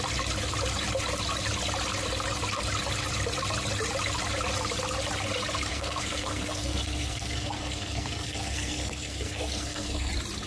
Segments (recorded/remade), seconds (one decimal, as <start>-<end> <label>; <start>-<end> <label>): 0.0-5.7 recorded; 5.7-10.1 remade; 10.1-10.5 recorded